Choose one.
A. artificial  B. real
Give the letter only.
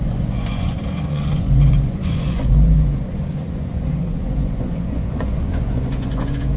A